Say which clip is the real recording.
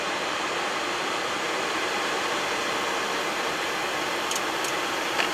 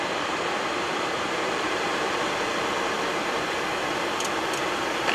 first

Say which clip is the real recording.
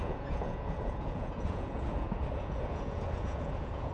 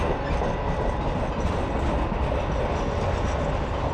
second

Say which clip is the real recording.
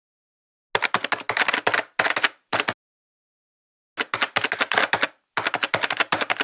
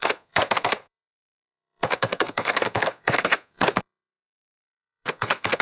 first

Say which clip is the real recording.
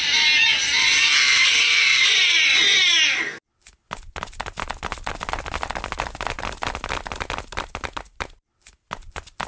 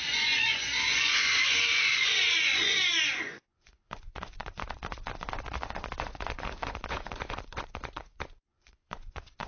first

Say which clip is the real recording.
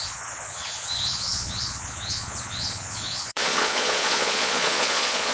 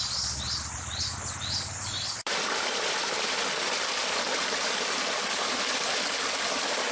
second